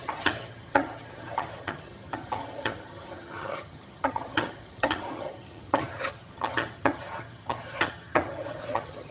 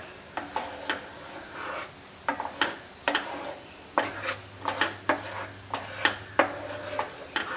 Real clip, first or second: second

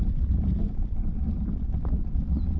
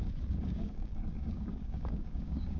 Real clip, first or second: first